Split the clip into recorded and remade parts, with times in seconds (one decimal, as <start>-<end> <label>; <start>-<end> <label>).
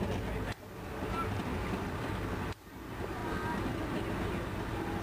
0.0-5.0 recorded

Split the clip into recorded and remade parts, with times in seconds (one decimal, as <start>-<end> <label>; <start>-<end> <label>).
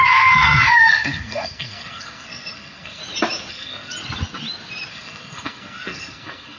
0.0-3.0 remade; 3.0-3.5 recorded; 3.5-3.9 remade; 3.9-4.9 recorded; 4.9-6.6 remade